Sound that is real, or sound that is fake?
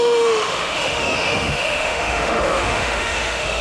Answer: fake